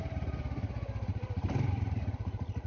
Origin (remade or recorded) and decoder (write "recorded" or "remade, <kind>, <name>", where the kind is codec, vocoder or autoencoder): remade, vocoder, BigVGAN v2